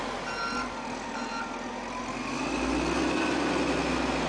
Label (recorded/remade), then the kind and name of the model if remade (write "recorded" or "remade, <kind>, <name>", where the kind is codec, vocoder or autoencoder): recorded